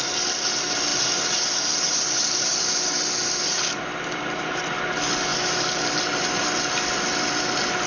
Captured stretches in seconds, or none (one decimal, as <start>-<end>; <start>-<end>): 0.0-7.9